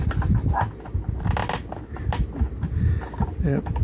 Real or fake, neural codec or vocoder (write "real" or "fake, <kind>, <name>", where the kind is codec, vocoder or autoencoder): real